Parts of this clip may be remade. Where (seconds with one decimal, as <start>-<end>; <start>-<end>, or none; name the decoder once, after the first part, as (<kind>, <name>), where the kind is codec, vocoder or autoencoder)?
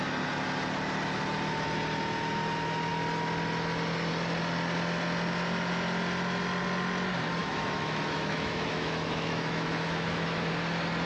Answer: 7.4-10.5 (autoencoder, DAC-VAE)